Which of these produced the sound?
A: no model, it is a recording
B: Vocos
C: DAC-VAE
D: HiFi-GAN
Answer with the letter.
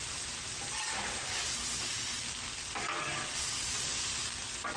A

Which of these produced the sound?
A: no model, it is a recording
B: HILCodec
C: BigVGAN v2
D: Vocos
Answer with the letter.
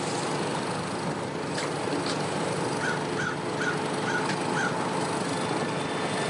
A